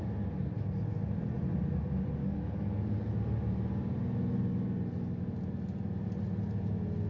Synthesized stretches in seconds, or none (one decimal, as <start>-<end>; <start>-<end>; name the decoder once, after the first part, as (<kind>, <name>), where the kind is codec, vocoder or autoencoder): 2.2-3.1 (codec, DAC)